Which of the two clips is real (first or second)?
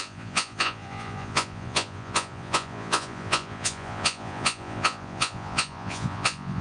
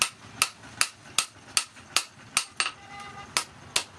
second